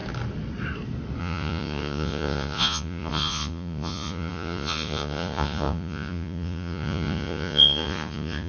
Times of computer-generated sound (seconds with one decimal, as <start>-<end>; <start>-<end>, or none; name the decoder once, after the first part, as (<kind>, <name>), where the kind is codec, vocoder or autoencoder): 1.2-8.5 (vocoder, Vocos)